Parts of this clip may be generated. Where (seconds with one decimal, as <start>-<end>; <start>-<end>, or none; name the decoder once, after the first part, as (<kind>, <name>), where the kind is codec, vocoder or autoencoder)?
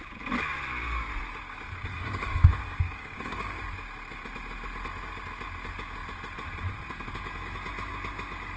1.9-3.6 (codec, DAC)